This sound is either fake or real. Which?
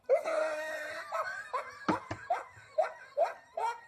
real